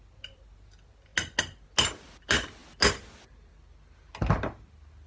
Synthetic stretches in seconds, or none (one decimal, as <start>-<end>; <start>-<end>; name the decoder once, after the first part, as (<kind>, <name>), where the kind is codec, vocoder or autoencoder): none

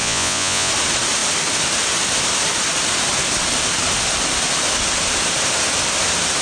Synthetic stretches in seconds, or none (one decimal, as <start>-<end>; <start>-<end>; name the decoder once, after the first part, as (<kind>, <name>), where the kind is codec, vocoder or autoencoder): 0.0-0.7 (vocoder, Vocos)

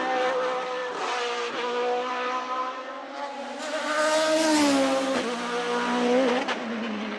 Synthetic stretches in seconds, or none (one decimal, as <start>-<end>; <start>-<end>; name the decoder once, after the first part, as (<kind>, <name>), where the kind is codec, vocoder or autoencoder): none

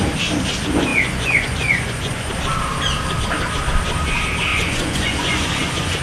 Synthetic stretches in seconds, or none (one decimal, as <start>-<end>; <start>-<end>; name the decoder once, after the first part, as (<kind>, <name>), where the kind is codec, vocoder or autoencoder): 0.9-2.3 (vocoder, Vocos); 4.5-6.0

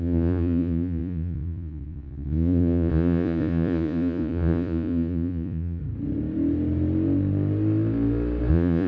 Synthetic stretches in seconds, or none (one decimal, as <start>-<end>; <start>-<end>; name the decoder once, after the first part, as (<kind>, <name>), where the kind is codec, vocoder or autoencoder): 0.0-5.8 (vocoder, Vocos); 8.5-8.9

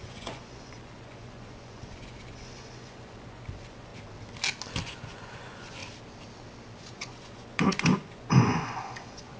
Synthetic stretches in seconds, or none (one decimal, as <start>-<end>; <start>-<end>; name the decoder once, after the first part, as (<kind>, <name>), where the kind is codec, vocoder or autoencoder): 0.0-3.9 (vocoder, Vocos); 4.8-5.8; 6.8-9.4

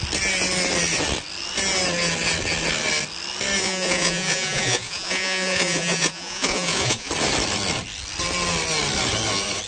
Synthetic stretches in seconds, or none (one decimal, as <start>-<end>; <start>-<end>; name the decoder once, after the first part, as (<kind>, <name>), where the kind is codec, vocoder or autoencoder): 3.6-7.1 (vocoder, Vocos)